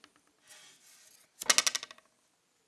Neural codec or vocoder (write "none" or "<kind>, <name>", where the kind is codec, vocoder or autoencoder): none